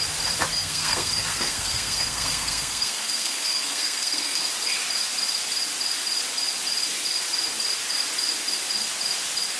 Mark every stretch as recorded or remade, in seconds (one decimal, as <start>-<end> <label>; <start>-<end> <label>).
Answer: 0.0-0.5 recorded; 0.5-4.4 remade; 4.4-9.6 recorded